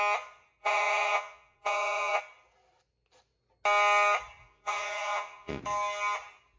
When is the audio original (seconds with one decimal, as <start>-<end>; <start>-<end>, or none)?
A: 0.0-0.6; 2.2-4.4; 5.6-6.6